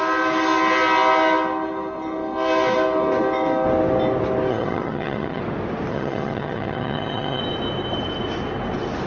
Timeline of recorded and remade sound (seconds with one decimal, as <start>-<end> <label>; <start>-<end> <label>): 0.0-4.5 recorded; 4.5-5.4 remade; 5.4-5.9 recorded; 5.9-7.4 remade; 7.4-9.1 recorded